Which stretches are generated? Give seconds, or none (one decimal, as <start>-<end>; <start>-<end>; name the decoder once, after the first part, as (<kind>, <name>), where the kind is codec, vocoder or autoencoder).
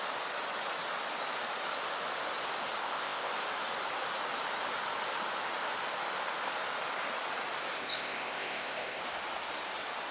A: 2.8-3.3 (codec, ZipCodec); 7.8-9.0